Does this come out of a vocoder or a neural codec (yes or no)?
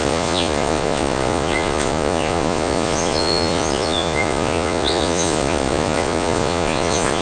yes